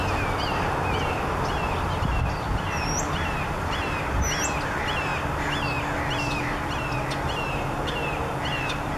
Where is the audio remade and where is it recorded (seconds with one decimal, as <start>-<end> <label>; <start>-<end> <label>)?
0.0-9.0 recorded